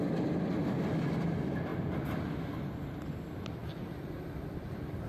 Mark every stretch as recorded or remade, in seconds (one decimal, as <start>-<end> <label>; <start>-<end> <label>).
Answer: 0.0-5.1 recorded